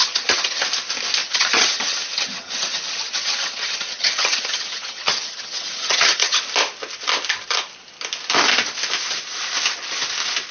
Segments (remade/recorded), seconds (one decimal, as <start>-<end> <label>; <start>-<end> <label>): 0.0-0.6 remade; 0.6-1.2 recorded; 1.2-6.4 remade; 6.4-10.5 recorded